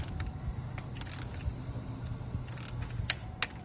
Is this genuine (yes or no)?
yes